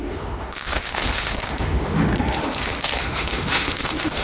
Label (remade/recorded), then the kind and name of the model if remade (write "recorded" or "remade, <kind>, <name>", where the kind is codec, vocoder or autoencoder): remade, autoencoder, DAC-VAE